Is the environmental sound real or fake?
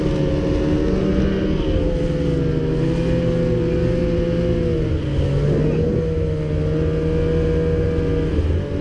real